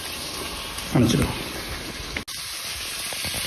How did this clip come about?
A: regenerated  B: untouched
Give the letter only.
B